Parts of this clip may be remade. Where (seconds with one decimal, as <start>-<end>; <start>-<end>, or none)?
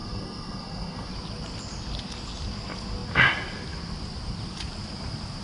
0.0-1.1